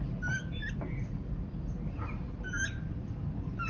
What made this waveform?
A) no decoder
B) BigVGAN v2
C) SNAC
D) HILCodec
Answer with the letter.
A